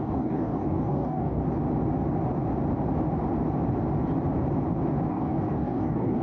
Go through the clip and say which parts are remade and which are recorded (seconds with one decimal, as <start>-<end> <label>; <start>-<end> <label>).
0.0-1.4 remade; 1.4-5.1 recorded; 5.1-6.2 remade